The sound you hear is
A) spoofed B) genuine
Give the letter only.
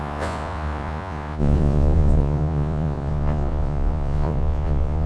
A